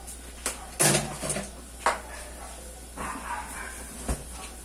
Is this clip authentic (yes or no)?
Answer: yes